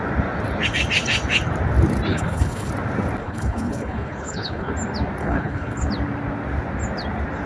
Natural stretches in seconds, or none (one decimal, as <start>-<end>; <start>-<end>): 0.0-2.1; 2.7-3.2; 4.7-5.2; 5.9-7.5